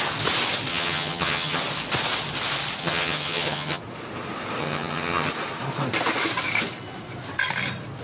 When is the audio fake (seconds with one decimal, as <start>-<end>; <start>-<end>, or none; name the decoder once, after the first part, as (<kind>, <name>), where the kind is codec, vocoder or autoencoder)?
0.7-1.6 (vocoder, HiFi-GAN); 2.8-3.8; 4.6-5.3